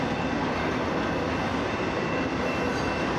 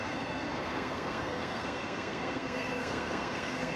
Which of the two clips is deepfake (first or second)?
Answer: second